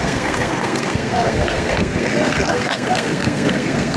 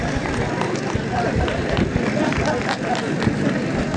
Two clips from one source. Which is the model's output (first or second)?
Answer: first